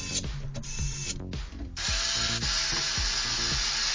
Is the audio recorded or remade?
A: recorded